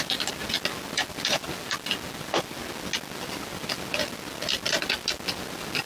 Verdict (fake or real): real